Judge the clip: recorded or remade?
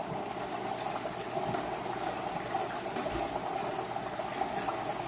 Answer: recorded